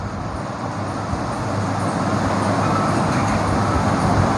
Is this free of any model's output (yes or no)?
yes